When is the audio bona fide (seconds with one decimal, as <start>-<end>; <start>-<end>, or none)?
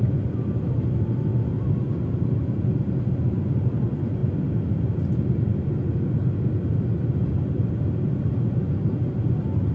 0.0-9.7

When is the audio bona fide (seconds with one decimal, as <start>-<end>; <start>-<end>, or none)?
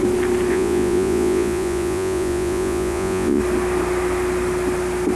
0.0-0.5; 3.4-5.2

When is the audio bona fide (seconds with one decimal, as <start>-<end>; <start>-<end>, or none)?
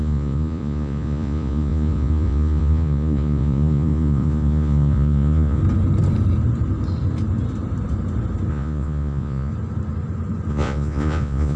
5.6-8.5; 9.5-10.5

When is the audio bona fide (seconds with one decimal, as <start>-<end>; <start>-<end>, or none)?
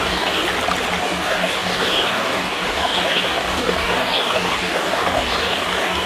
0.4-1.0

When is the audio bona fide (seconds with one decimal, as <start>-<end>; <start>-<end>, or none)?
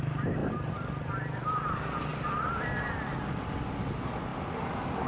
0.0-5.1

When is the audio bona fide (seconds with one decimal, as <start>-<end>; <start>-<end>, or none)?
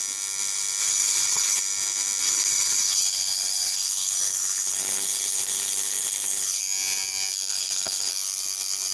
0.0-0.8; 1.6-2.2; 6.6-7.5; 8.1-8.9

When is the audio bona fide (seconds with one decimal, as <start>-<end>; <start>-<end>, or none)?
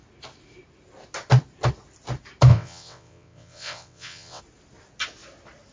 0.0-2.5; 4.4-5.7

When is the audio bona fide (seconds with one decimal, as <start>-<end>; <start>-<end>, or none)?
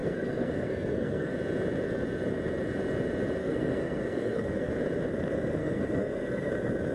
1.3-3.4; 4.7-5.6; 6.5-6.9